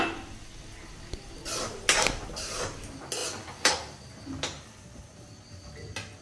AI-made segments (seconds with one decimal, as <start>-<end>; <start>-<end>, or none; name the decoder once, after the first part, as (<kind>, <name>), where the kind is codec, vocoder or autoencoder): 3.2-3.7 (vocoder, BigVGAN v2)